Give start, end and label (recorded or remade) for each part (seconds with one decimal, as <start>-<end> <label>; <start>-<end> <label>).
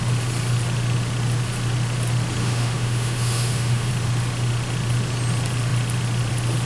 0.0-2.4 recorded; 2.4-3.9 remade; 3.9-6.7 recorded